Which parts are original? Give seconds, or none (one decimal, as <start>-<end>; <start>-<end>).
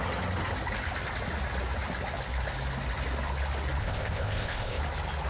0.0-3.8; 4.8-5.3